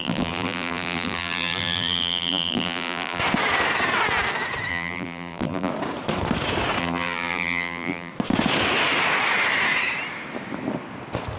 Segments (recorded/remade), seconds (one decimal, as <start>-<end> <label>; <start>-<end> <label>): 0.0-3.2 remade; 3.2-4.7 recorded; 4.7-5.7 remade; 5.7-6.8 recorded; 6.8-8.1 remade; 8.1-11.4 recorded